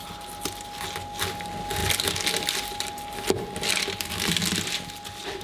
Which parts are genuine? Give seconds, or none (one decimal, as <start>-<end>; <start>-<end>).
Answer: 0.0-5.4